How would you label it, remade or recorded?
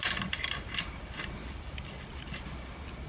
remade